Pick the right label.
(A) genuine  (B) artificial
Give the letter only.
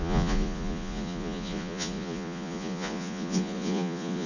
B